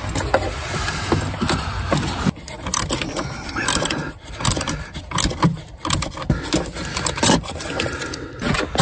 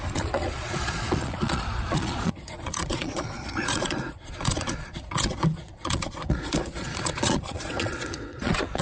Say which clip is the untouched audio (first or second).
first